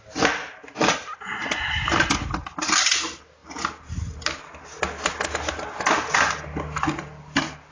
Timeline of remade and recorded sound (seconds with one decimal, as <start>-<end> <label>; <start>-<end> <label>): 0.0-7.7 recorded